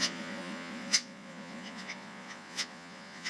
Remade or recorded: remade